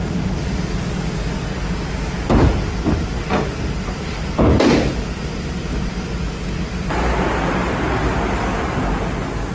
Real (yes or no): yes